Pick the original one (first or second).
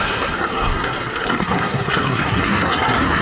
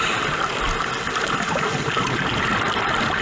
second